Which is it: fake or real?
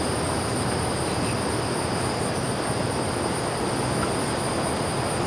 real